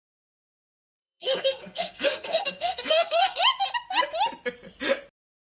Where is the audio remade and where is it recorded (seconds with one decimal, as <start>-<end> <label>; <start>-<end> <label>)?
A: 0.0-3.4 remade; 3.4-5.6 recorded

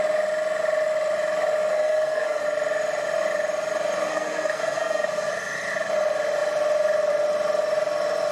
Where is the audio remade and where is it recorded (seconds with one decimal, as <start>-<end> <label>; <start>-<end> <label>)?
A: 0.0-1.7 recorded; 1.7-2.4 remade; 2.4-4.1 recorded; 4.1-5.3 remade; 5.3-8.3 recorded

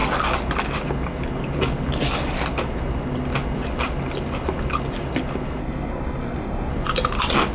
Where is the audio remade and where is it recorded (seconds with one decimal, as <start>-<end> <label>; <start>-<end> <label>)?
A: 0.0-5.6 recorded; 5.6-6.7 remade; 6.7-7.5 recorded

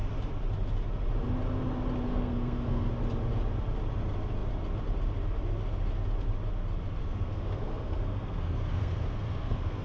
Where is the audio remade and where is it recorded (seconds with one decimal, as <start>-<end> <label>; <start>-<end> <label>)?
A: 0.0-2.1 recorded; 2.1-2.9 remade; 2.9-7.0 recorded; 7.0-9.8 remade

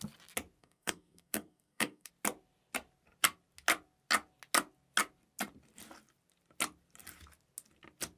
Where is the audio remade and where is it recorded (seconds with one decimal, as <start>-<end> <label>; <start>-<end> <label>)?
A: 0.0-0.6 recorded; 0.6-2.1 remade; 2.1-8.2 recorded

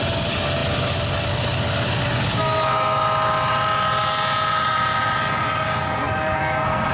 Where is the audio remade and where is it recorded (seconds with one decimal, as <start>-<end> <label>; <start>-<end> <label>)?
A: 0.0-6.0 recorded; 6.0-6.9 remade